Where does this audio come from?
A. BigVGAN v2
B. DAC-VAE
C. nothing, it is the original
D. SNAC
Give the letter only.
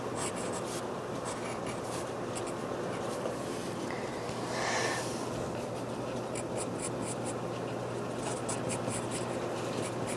C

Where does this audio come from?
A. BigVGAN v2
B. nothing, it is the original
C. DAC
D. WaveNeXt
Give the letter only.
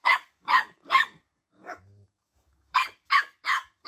C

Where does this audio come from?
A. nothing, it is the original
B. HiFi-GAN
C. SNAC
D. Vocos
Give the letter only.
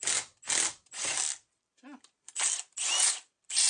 A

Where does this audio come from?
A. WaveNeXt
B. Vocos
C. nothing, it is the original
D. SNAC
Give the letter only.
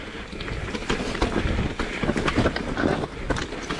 C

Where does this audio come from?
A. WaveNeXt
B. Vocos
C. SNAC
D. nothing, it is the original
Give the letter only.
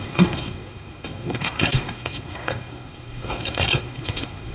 C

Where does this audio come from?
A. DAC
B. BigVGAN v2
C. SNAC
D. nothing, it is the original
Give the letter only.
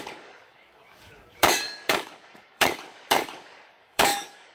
A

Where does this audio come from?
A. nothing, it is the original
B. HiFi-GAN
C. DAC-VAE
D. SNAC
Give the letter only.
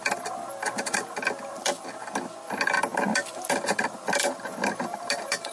A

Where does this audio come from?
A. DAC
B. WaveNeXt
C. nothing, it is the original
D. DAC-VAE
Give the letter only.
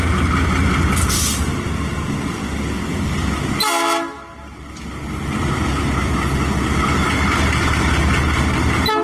C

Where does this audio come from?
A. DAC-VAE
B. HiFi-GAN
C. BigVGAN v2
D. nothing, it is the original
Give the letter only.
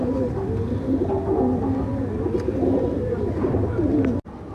D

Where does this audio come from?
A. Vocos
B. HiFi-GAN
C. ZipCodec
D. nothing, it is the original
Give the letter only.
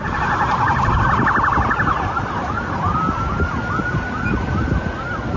D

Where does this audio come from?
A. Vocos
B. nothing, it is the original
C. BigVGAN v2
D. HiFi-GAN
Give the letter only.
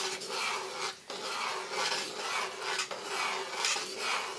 B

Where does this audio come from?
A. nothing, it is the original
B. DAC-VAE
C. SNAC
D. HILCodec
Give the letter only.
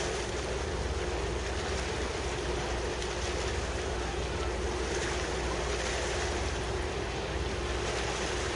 A